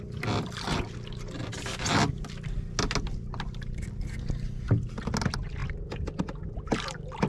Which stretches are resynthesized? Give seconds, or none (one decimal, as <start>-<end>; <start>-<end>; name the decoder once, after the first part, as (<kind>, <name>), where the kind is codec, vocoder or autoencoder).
none